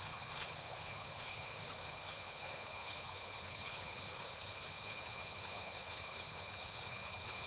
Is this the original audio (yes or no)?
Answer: no